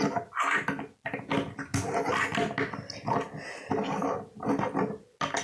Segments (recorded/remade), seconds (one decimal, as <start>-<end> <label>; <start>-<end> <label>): 0.0-5.4 recorded